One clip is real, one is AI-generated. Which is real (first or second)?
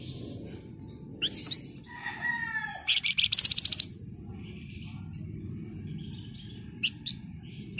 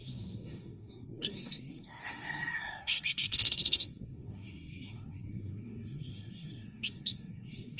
first